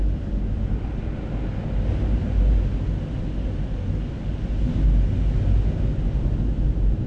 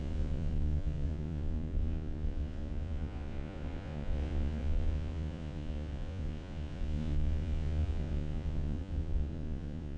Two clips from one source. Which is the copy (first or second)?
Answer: second